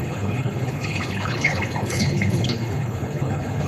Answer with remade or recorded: remade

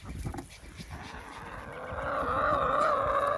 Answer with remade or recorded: recorded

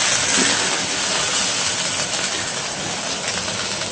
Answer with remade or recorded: recorded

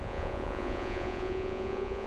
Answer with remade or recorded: remade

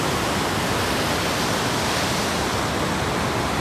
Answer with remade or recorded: recorded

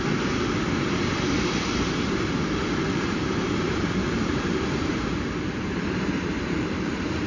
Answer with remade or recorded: remade